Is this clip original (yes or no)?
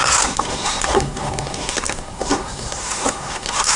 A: no